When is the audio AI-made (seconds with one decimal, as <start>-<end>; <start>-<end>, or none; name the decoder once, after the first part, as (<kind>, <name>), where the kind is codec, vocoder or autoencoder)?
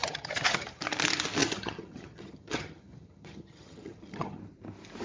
0.0-0.8 (vocoder, HiFi-GAN); 1.4-4.4